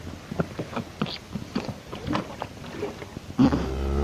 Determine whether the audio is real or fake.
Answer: real